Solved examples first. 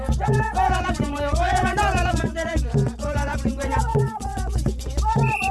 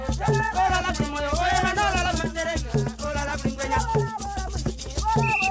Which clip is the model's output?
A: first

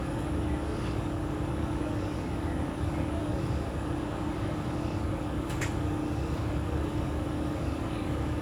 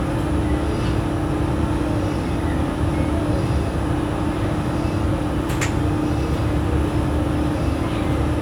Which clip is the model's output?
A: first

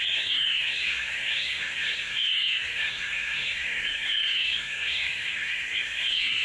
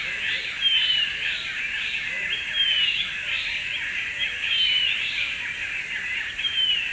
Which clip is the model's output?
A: first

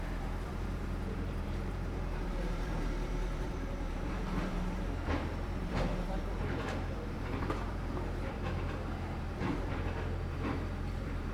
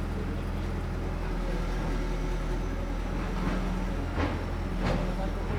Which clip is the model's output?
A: first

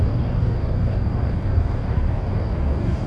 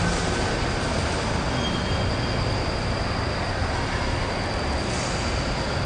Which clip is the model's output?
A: first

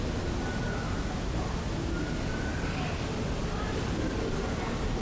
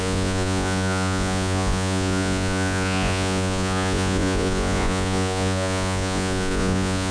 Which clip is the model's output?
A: second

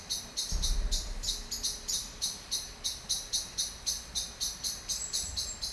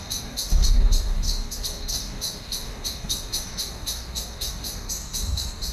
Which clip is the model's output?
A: second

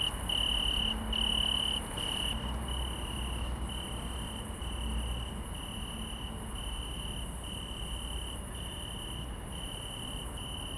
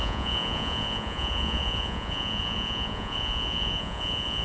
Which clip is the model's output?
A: second